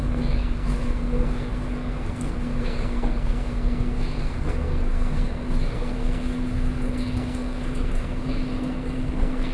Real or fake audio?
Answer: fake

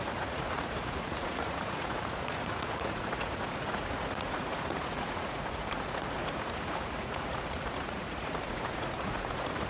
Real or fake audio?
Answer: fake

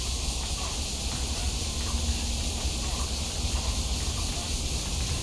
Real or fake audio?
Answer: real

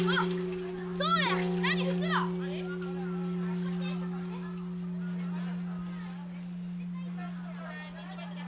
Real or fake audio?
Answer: real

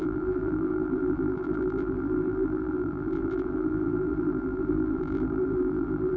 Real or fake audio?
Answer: fake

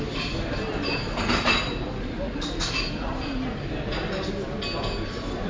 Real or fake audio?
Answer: real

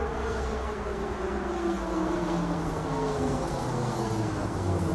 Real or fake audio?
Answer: fake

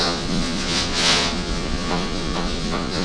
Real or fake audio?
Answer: fake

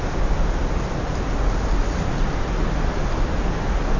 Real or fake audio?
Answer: real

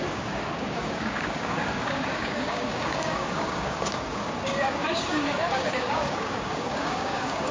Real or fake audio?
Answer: fake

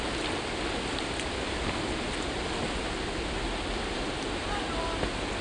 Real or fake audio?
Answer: real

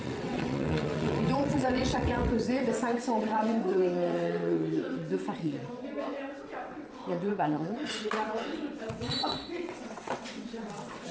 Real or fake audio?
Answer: fake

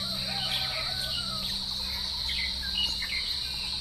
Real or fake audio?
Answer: real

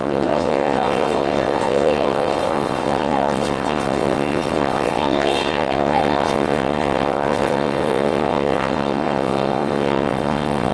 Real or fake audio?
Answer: fake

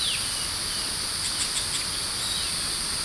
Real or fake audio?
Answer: real